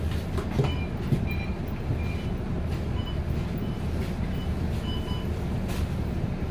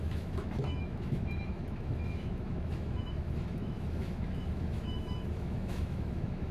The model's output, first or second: second